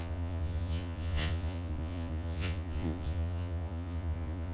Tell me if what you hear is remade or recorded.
remade